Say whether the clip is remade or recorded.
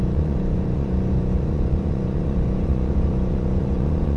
remade